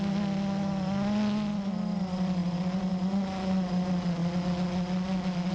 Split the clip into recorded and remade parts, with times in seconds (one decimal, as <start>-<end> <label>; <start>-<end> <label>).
0.0-2.4 recorded; 2.4-2.9 remade; 2.9-5.5 recorded